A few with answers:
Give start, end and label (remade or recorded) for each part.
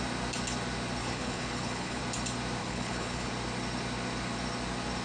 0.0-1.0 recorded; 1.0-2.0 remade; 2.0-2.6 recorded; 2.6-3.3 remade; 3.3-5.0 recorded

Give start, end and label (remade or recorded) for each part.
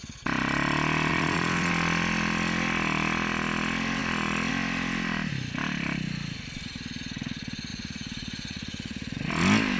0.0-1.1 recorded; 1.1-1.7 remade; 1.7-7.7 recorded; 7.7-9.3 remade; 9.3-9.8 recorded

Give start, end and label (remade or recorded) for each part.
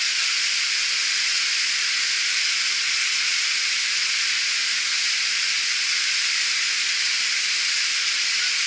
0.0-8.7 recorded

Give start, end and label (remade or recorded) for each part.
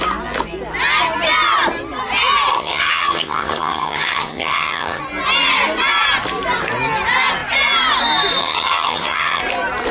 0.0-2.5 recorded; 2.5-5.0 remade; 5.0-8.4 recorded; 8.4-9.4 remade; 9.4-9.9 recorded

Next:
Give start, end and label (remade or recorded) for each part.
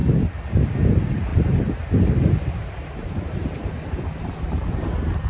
0.0-0.9 recorded; 0.9-1.3 remade; 1.3-2.4 recorded; 2.4-3.6 remade; 3.6-4.2 recorded; 4.2-5.3 remade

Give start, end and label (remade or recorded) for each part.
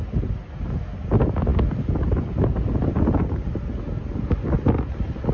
0.0-5.3 recorded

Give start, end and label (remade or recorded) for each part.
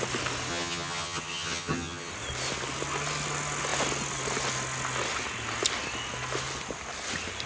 0.0-0.5 recorded; 0.5-2.1 remade; 2.1-7.5 recorded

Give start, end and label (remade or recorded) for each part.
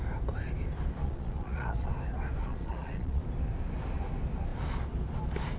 0.0-1.0 recorded; 1.0-1.9 remade; 1.9-2.4 recorded; 2.4-3.2 remade; 3.2-5.6 recorded